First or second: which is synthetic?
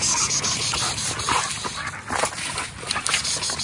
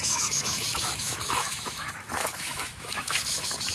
second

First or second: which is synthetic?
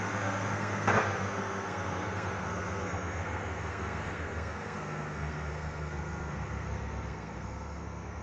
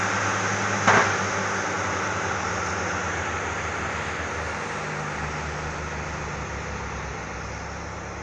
first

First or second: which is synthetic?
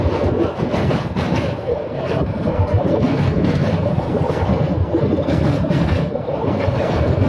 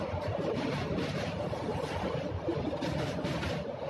first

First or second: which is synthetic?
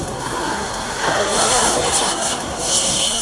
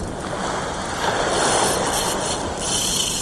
first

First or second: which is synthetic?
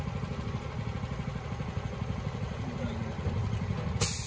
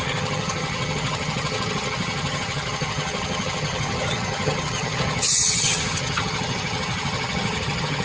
second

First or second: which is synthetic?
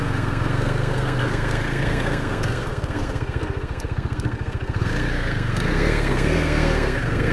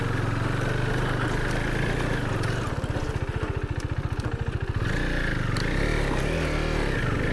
first